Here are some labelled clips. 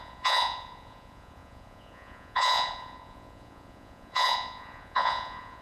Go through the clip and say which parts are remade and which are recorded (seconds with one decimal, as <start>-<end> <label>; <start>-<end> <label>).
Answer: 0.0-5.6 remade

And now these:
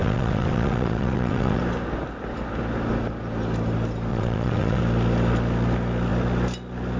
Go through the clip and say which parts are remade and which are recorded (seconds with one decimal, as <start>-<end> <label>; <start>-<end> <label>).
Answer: 0.0-1.6 remade; 1.6-4.1 recorded; 4.1-4.8 remade; 4.8-7.0 recorded

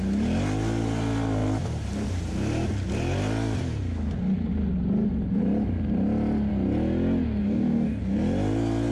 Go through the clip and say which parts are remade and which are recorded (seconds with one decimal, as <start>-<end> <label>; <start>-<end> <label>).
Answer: 0.0-7.4 recorded; 7.4-8.0 remade; 8.0-8.9 recorded

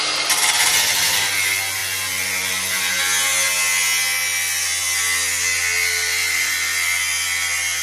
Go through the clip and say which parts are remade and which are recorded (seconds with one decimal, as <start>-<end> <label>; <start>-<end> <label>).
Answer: 0.0-7.8 recorded

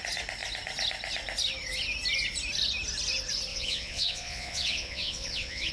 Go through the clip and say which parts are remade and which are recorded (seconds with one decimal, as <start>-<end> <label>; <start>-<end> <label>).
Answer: 0.0-3.5 recorded; 3.5-5.7 remade

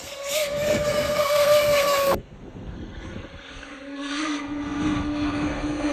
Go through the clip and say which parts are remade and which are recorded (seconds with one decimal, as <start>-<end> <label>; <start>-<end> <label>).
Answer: 0.0-5.9 remade

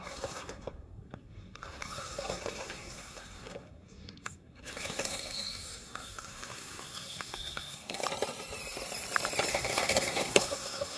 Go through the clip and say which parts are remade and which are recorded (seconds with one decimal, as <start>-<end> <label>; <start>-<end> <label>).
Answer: 0.0-8.0 remade; 8.0-9.5 recorded; 9.5-11.0 remade

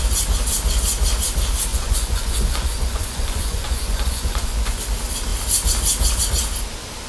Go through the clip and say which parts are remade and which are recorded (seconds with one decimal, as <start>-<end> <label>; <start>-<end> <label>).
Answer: 0.0-1.7 recorded; 1.7-4.8 remade; 4.8-7.1 recorded